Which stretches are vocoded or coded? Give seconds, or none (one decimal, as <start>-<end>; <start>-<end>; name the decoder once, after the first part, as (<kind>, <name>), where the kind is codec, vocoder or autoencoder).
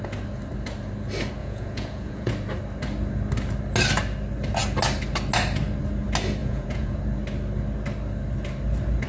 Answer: 1.4-2.3 (vocoder, Vocos); 6.4-7.0